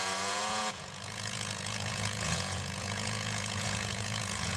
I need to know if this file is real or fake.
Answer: fake